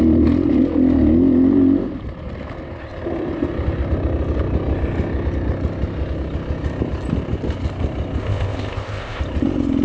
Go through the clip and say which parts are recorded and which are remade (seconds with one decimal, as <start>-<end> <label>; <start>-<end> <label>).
0.0-8.2 recorded; 8.2-9.2 remade; 9.2-9.8 recorded